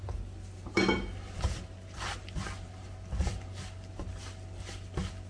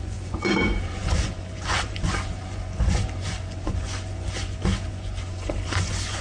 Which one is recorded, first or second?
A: first